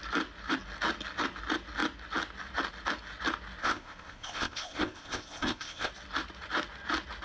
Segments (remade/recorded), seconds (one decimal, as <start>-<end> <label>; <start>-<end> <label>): 0.0-3.6 recorded; 3.6-5.9 remade; 5.9-7.2 recorded